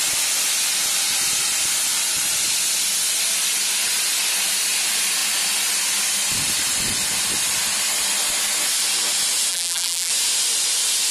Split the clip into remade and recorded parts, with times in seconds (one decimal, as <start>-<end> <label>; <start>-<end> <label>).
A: 0.0-9.5 recorded; 9.5-10.1 remade; 10.1-11.1 recorded